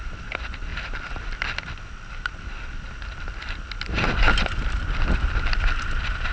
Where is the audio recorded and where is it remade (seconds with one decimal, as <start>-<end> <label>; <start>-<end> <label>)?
0.0-6.3 recorded